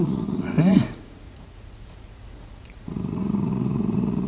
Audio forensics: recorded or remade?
remade